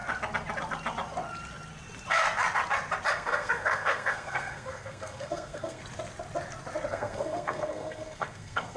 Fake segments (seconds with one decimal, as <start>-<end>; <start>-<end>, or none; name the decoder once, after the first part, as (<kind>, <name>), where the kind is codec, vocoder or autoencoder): 3.1-5.8 (codec, SNAC); 6.9-8.8